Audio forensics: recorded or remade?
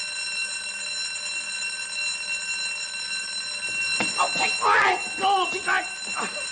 recorded